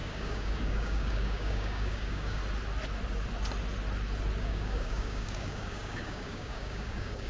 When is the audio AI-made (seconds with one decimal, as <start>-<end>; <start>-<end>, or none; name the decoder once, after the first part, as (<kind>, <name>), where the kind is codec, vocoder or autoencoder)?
0.0-2.4 (codec, DAC); 4.4-7.3